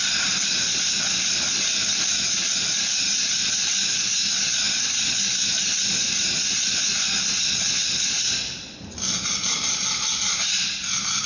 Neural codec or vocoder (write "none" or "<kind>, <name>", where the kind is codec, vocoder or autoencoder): none